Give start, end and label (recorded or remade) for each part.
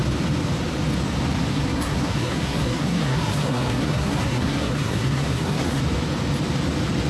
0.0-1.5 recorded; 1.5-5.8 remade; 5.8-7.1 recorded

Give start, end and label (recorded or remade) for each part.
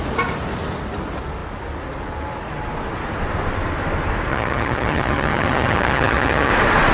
0.0-4.3 recorded; 4.3-6.5 remade; 6.5-6.9 recorded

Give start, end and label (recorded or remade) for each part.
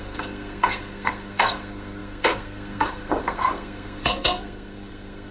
0.0-5.3 remade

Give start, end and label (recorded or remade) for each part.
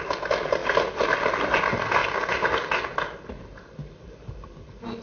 0.0-5.0 recorded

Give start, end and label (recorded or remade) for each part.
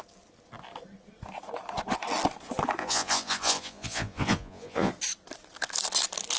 0.0-2.8 recorded; 2.8-4.9 remade; 4.9-6.4 recorded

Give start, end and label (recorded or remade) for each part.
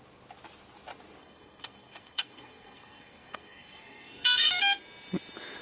0.0-1.2 recorded; 1.2-4.6 remade; 4.6-5.6 recorded